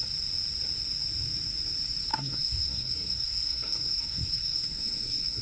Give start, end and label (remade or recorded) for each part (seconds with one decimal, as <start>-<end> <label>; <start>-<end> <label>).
0.0-2.1 recorded; 2.1-5.4 remade